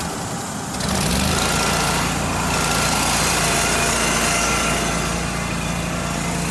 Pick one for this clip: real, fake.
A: real